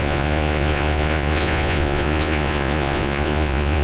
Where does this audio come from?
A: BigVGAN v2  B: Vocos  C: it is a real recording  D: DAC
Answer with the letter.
B